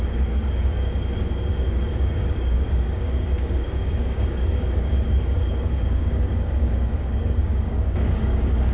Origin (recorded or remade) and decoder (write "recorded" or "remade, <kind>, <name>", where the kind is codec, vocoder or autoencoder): remade, codec, DAC